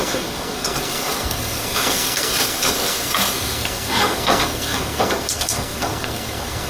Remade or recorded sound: remade